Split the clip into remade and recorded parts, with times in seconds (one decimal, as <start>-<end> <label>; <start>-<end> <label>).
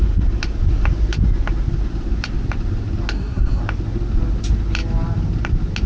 0.0-3.1 recorded; 3.1-3.6 remade; 3.6-5.9 recorded